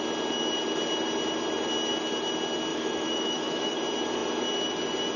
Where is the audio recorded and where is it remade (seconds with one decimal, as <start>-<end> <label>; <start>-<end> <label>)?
0.0-2.7 recorded; 2.7-3.8 remade; 3.8-5.2 recorded